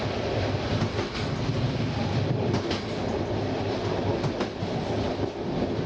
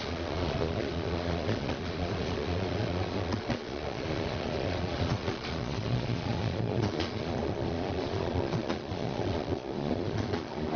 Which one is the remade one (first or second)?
second